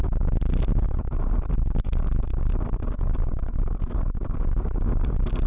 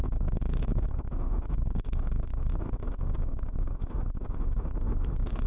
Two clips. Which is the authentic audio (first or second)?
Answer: first